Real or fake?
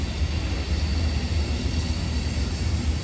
real